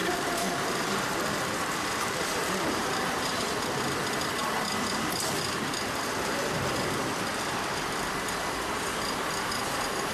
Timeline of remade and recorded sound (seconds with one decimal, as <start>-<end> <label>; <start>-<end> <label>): 0.0-3.4 remade; 3.4-10.1 recorded